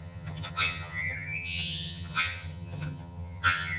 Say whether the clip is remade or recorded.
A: remade